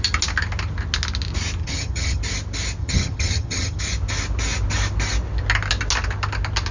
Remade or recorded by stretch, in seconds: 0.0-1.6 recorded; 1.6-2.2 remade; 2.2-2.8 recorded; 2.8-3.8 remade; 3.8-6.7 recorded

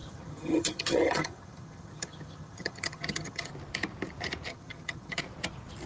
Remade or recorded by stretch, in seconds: 0.0-3.5 remade; 3.5-4.5 recorded; 4.5-5.2 remade; 5.2-5.9 recorded

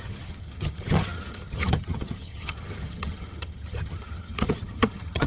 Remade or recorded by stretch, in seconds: 0.0-5.3 remade

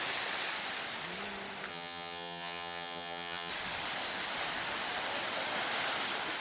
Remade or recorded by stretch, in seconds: 0.0-1.7 recorded; 1.7-3.5 remade; 3.5-6.4 recorded

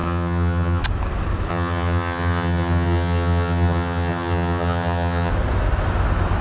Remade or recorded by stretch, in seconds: 0.0-0.8 remade; 0.8-1.5 recorded; 1.5-5.3 remade; 5.3-6.4 recorded